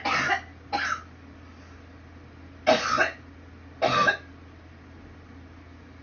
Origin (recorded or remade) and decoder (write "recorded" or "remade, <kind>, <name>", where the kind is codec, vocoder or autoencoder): recorded